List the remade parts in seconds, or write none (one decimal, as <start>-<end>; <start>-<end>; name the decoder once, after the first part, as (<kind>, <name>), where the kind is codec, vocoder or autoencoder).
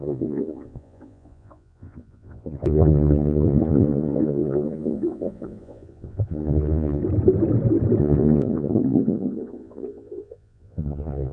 0.0-7.0 (vocoder, Vocos); 8.0-11.3